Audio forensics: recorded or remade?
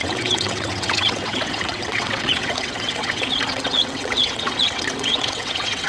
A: remade